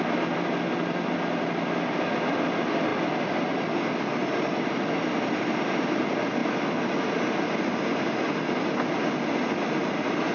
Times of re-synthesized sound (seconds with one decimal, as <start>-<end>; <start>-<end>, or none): none

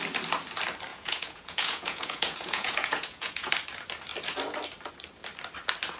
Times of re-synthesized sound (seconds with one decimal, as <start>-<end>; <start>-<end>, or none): 0.9-3.5

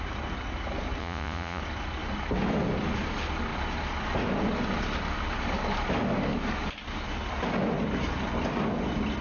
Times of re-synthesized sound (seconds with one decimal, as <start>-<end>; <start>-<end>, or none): 1.0-1.6

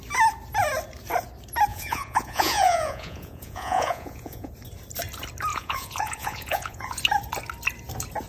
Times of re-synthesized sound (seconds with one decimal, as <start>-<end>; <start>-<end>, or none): 1.7-4.5; 5.5-7.0

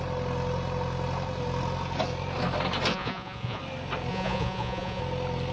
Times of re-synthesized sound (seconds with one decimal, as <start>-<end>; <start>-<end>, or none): 2.9-3.6; 4.1-5.0

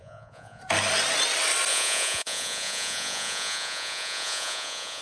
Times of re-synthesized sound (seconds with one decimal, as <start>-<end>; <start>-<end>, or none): 0.0-0.6; 1.7-5.0

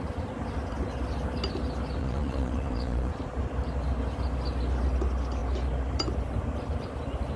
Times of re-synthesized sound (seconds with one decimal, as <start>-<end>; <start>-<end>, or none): 2.0-3.1